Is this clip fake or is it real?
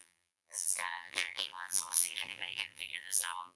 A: fake